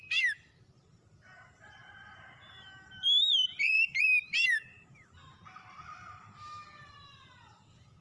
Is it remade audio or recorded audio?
remade